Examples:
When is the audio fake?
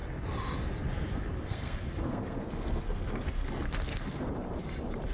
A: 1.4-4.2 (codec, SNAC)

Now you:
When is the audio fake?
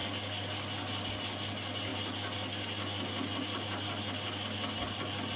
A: none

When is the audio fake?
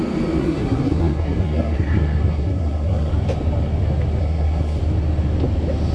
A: 0.4-3.1 (codec, SNAC); 4.2-4.8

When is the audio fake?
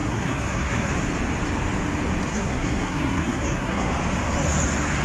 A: 0.0-0.9 (codec, SNAC); 2.3-3.9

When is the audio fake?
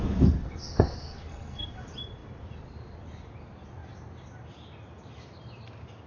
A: 0.4-1.8 (codec, SNAC)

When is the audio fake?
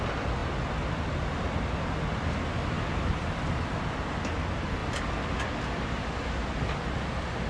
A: none